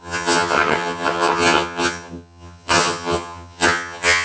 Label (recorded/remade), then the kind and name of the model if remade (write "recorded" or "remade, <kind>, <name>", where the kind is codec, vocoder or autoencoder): remade, vocoder, HiFi-GAN